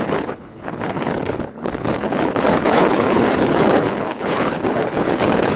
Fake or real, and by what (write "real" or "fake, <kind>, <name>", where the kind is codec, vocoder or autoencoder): fake, codec, HILCodec